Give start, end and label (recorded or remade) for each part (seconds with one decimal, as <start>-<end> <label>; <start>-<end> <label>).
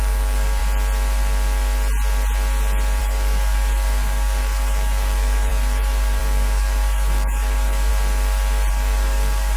0.0-0.6 remade; 0.6-3.0 recorded; 3.0-7.9 remade; 7.9-8.7 recorded; 8.7-9.6 remade